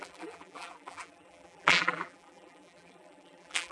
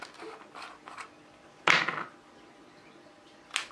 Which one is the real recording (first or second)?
second